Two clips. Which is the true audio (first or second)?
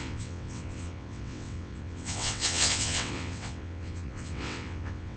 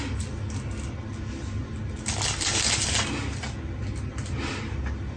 second